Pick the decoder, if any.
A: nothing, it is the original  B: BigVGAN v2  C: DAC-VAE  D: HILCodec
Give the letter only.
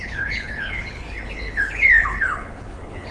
D